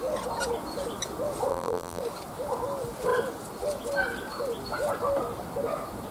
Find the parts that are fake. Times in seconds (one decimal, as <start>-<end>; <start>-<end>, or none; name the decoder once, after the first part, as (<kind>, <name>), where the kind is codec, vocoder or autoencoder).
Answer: 1.5-2.0 (vocoder, BigVGAN v2)